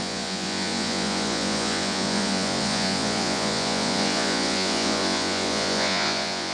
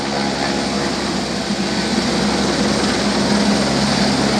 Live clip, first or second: second